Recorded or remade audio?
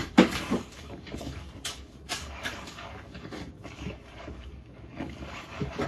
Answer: remade